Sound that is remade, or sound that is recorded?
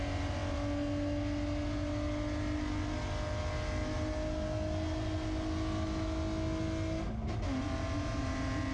recorded